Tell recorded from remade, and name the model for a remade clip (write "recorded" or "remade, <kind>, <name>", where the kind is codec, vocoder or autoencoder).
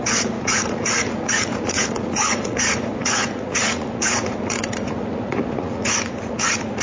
remade, vocoder, Vocos